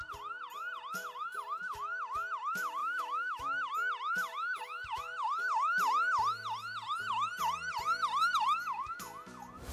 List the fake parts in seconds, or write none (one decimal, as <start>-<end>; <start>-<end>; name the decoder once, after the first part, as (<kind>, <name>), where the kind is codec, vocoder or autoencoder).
2.8-3.7 (autoencoder, DAC-VAE)